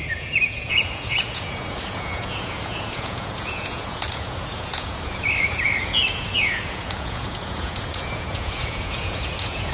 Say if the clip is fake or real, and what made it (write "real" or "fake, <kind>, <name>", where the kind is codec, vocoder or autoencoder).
fake, vocoder, Vocos